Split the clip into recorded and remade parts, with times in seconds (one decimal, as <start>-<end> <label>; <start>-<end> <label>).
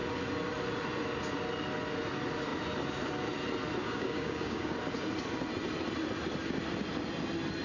0.0-3.8 recorded; 3.8-4.7 remade; 4.7-7.6 recorded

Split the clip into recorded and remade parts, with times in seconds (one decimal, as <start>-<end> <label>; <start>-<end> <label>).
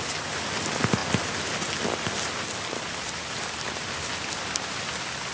0.0-5.3 recorded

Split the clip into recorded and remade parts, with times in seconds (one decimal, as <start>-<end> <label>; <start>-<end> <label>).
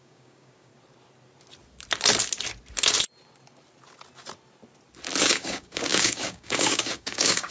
0.0-0.7 remade; 0.7-5.2 recorded; 5.2-7.5 remade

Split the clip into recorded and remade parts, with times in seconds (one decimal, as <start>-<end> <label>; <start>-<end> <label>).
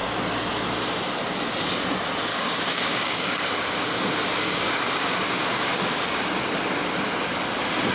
0.0-2.3 recorded; 2.3-6.2 remade; 6.2-7.9 recorded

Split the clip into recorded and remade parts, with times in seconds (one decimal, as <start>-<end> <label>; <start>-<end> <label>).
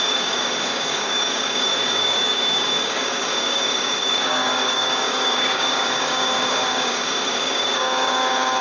0.0-8.6 remade